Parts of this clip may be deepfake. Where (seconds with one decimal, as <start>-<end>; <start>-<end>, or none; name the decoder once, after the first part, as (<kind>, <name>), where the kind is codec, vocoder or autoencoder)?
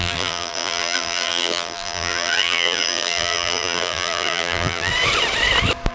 0.0-4.9 (vocoder, BigVGAN v2)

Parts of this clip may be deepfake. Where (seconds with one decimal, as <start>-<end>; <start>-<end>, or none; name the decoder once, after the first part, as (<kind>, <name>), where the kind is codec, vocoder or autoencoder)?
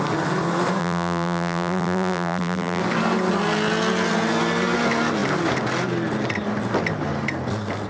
0.8-2.8 (vocoder, BigVGAN v2)